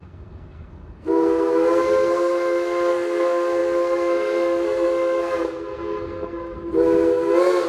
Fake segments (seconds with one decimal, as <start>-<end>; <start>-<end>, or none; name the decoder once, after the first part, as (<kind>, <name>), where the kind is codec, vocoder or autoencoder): 0.0-7.7 (codec, SNAC)